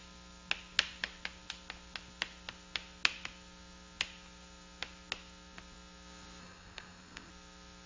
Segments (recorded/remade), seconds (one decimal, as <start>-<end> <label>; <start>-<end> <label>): 0.0-6.4 recorded; 6.4-7.3 remade; 7.3-7.9 recorded